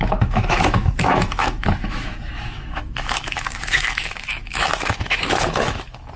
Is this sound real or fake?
fake